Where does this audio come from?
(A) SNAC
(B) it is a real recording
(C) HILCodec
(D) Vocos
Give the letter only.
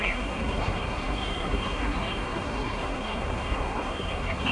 A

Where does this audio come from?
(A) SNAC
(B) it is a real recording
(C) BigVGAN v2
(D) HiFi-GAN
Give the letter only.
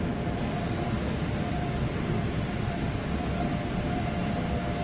B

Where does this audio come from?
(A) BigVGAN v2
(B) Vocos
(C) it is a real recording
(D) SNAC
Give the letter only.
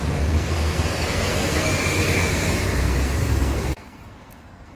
D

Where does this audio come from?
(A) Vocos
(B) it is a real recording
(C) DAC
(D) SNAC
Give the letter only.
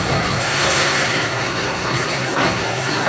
D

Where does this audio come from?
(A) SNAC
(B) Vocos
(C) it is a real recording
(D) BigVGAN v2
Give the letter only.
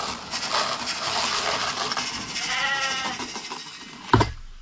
C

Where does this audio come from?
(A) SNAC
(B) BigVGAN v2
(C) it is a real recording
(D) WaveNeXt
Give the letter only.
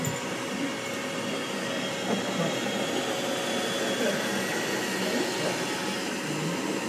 C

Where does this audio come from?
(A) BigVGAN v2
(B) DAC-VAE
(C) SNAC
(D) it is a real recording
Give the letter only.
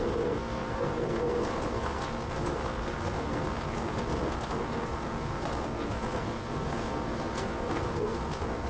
C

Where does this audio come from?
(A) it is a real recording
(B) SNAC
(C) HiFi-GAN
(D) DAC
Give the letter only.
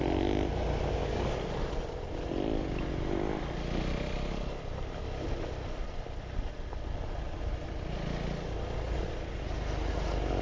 A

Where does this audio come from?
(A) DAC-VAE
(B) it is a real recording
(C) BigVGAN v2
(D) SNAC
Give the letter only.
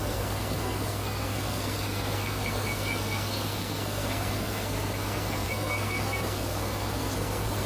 D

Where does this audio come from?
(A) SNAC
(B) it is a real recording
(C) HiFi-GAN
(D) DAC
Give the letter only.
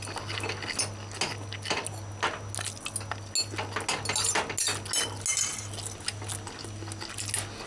B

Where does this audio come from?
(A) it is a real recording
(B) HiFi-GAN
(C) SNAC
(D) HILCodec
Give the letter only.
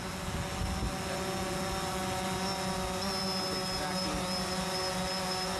A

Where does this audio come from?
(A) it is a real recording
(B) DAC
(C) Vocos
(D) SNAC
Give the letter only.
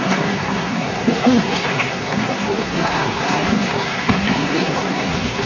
D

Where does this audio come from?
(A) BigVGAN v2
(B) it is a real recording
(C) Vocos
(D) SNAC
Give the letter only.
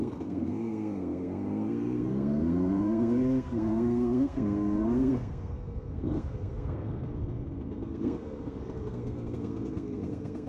D